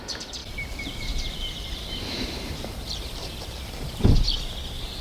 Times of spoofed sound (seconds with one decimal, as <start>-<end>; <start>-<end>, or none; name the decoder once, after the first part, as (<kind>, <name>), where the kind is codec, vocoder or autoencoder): 0.0-0.4 (vocoder, BigVGAN v2); 1.9-5.0